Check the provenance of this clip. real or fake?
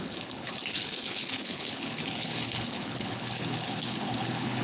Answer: fake